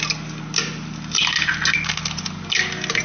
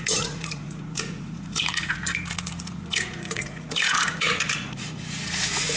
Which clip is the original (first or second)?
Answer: first